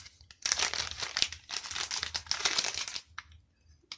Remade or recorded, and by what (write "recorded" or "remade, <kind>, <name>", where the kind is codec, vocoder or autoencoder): recorded